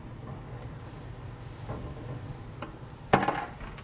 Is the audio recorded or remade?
recorded